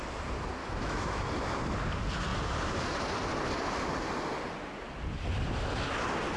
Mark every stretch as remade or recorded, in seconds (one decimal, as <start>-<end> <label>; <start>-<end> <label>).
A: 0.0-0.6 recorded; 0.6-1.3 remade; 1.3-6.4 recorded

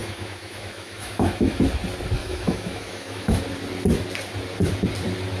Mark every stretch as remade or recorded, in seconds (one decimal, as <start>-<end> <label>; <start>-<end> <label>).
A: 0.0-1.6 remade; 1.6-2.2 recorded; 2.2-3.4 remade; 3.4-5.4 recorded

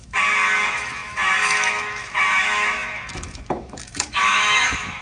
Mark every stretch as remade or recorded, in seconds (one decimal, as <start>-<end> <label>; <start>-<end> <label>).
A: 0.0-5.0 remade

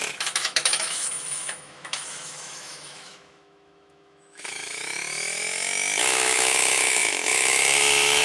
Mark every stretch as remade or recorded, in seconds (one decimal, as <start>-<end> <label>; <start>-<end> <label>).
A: 0.0-8.2 remade

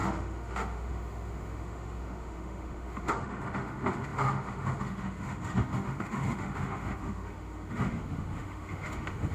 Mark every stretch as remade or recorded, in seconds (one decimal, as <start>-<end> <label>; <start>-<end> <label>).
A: 0.0-9.3 remade